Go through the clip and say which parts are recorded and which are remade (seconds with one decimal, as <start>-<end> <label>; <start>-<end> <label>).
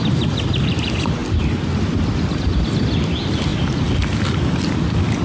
0.0-5.2 recorded